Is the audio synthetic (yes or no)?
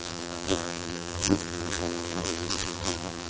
yes